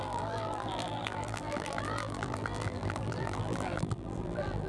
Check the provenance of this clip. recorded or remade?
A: remade